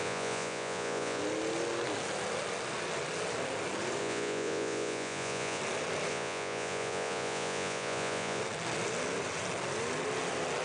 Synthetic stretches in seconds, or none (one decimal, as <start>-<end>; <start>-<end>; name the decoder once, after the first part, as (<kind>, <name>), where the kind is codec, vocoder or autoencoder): 0.0-1.2 (vocoder, Vocos); 4.0-5.6; 6.1-8.4